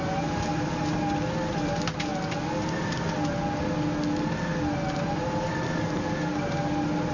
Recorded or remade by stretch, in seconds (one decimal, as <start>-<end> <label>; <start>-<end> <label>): 0.0-7.1 recorded